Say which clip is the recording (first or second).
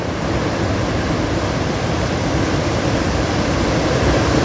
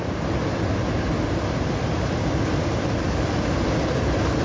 second